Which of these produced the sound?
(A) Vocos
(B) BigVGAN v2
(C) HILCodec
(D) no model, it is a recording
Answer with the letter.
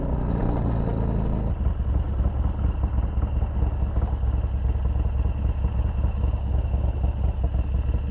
D